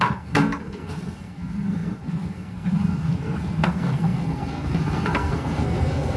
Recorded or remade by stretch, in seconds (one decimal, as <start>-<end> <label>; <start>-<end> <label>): 0.0-6.2 remade